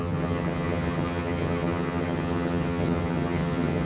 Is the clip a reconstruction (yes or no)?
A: yes